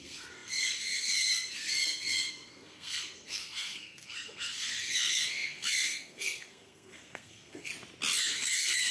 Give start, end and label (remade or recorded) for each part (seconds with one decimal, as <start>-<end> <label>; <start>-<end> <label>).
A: 0.0-7.7 remade; 7.7-8.2 recorded; 8.2-8.9 remade

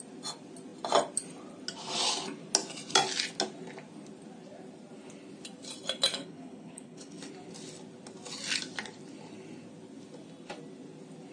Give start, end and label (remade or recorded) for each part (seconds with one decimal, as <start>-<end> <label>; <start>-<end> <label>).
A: 0.0-6.1 recorded; 6.1-7.3 remade; 7.3-11.3 recorded